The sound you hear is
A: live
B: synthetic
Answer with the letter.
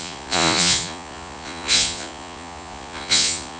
B